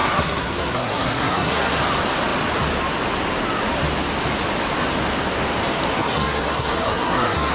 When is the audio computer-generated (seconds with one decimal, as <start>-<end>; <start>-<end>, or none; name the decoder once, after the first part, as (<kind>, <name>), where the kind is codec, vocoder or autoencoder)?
0.0-1.8 (codec, SNAC); 6.0-7.5